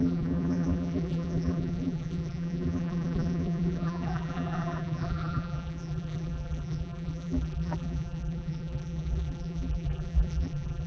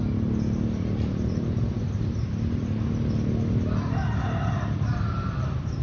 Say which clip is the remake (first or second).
first